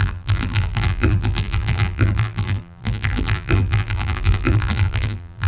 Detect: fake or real fake